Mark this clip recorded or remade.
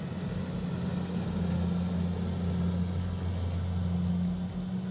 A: recorded